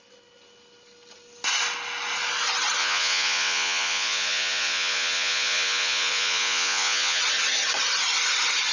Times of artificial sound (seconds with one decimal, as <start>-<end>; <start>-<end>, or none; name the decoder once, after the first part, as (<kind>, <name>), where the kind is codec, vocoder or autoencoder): 2.8-7.2 (vocoder, Vocos)